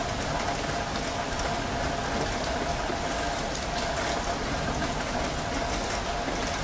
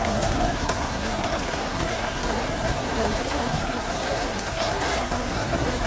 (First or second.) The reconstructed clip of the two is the second